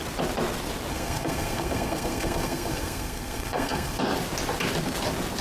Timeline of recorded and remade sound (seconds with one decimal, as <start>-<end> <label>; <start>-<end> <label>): 0.0-0.9 recorded; 0.9-4.0 remade; 4.0-5.4 recorded